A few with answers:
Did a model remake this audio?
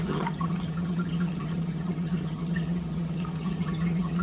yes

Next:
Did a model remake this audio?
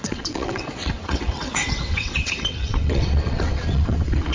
yes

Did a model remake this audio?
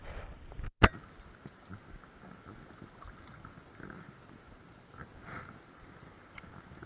no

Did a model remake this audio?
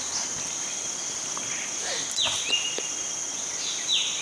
no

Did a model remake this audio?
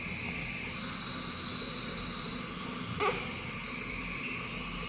no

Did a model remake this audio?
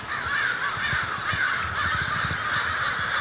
no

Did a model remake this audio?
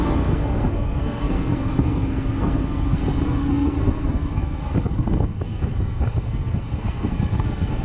yes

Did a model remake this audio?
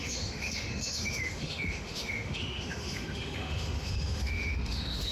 yes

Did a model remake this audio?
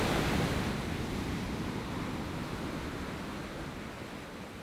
no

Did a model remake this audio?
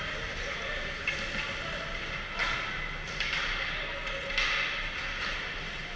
no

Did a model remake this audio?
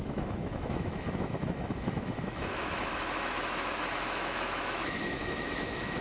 yes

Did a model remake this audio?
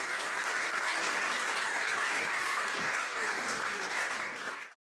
yes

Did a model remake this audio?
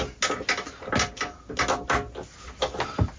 no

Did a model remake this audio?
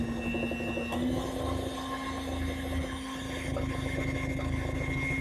no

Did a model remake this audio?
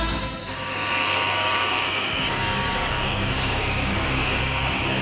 yes